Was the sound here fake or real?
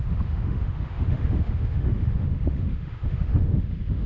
fake